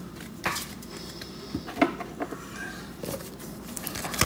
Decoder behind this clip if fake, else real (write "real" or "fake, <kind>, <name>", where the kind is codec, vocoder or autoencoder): real